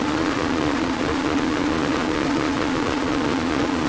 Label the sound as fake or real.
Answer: fake